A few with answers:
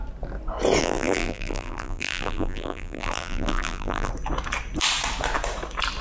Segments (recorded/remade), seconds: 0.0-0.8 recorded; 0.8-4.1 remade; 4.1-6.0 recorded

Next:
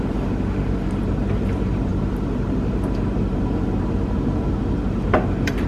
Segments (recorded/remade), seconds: 0.0-5.7 remade

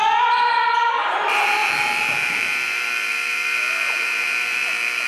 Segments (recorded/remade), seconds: 0.0-1.6 recorded; 1.6-5.1 remade

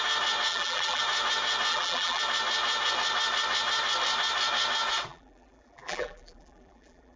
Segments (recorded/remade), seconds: 0.0-0.5 recorded; 0.5-1.0 remade; 1.0-1.7 recorded; 1.7-2.2 remade; 2.2-5.1 recorded; 5.1-7.2 remade

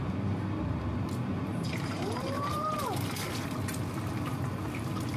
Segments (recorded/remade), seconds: 0.0-1.5 recorded; 1.5-2.7 remade; 2.7-5.2 recorded

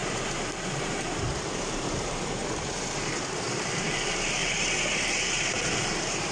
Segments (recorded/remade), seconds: 0.0-2.4 remade; 2.4-3.0 recorded; 3.0-4.4 remade; 4.4-5.4 recorded; 5.4-6.3 remade

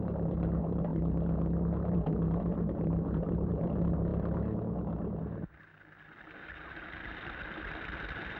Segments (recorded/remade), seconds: 0.0-0.9 remade; 0.9-1.9 recorded; 1.9-4.1 remade; 4.1-5.1 recorded; 5.1-5.7 remade; 5.7-8.4 recorded

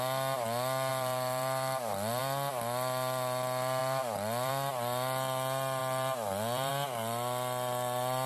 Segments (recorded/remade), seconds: 0.0-0.9 recorded; 0.9-2.2 remade; 2.2-3.8 recorded; 3.8-4.5 remade; 4.5-5.8 recorded; 5.8-6.7 remade; 6.7-8.3 recorded